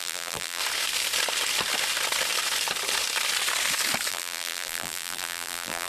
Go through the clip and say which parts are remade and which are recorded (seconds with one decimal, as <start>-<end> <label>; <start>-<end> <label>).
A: 0.0-0.6 remade; 0.6-4.1 recorded; 4.1-5.9 remade